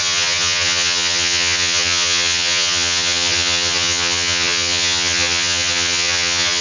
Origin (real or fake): fake